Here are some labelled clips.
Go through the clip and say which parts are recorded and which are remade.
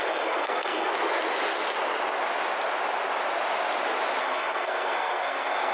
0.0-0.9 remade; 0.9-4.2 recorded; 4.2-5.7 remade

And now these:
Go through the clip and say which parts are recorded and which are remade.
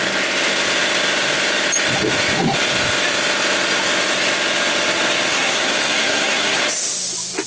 0.0-5.3 recorded; 5.3-6.6 remade; 6.6-7.5 recorded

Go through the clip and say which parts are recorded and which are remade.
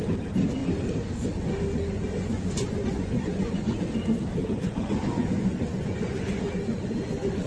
0.0-1.9 recorded; 1.9-3.7 remade; 3.7-4.4 recorded; 4.4-6.4 remade; 6.4-7.5 recorded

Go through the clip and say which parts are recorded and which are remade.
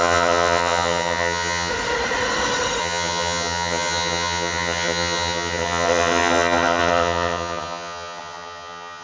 0.0-1.7 remade; 1.7-2.8 recorded; 2.8-9.0 remade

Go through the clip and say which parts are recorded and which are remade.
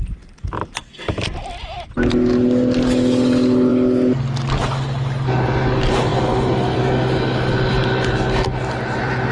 0.0-9.3 recorded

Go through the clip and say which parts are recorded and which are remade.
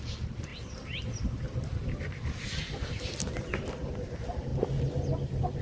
0.0-0.5 remade; 0.5-1.6 recorded; 1.6-4.5 remade; 4.5-5.6 recorded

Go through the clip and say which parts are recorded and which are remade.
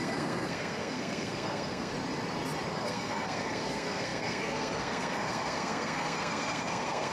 0.0-1.9 remade; 1.9-2.7 recorded; 2.7-7.1 remade